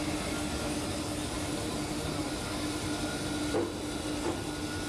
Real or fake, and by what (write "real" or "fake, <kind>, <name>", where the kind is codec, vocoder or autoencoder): real